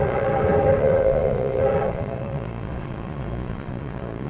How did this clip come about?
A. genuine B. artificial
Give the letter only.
B